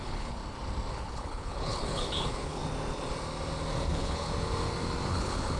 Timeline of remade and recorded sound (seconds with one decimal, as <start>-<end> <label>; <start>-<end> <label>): 0.0-0.4 remade; 0.4-0.9 recorded; 0.9-2.6 remade; 2.6-3.9 recorded; 3.9-4.3 remade; 4.3-5.1 recorded; 5.1-5.6 remade